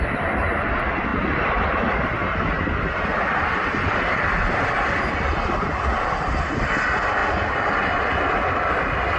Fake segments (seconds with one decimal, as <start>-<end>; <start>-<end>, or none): none

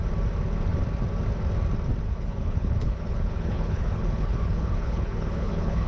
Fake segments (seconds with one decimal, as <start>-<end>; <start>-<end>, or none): 2.1-5.9

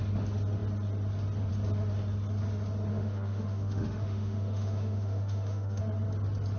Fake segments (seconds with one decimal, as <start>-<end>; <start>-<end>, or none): 2.9-5.8

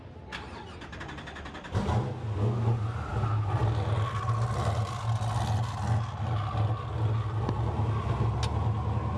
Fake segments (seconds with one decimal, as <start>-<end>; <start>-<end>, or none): none